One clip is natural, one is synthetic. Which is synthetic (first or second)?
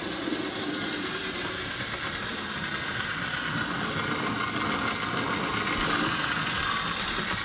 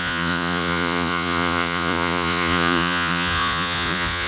second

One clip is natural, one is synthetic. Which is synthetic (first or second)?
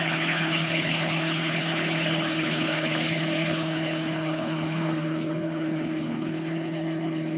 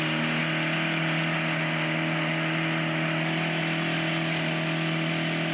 first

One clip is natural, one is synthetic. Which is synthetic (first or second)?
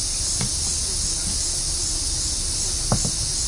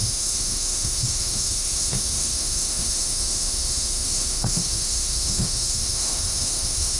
second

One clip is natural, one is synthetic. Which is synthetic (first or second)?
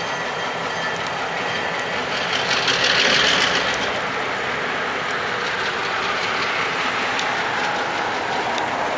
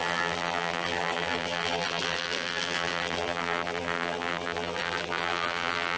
second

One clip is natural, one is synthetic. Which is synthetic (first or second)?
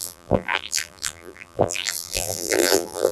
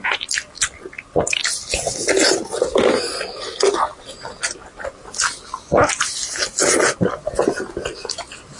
first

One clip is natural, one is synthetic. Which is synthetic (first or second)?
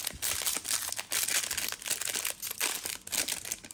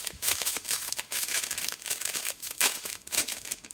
second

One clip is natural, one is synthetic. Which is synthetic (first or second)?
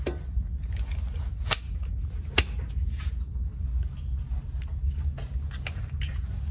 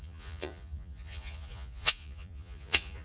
second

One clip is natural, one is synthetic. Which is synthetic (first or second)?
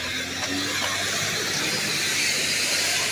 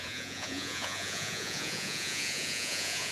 second